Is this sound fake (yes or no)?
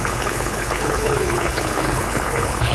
yes